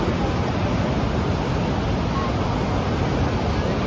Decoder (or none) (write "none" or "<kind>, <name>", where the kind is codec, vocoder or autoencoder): none